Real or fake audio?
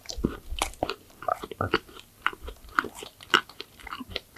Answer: fake